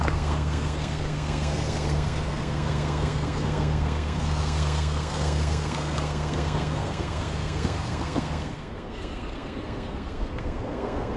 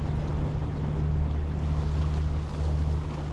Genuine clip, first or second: second